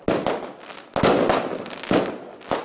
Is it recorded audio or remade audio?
recorded